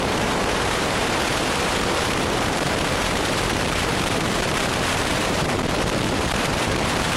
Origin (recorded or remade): remade